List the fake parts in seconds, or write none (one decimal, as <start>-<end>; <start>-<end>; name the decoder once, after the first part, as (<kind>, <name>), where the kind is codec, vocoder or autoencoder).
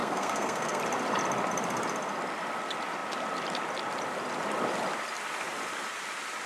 0.0-0.8 (codec, SNAC)